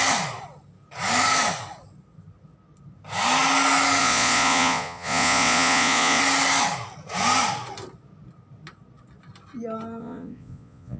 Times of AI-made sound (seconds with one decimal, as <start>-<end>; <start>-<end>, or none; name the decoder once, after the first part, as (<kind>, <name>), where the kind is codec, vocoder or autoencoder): 4.0-6.2 (vocoder, Vocos); 10.0-11.0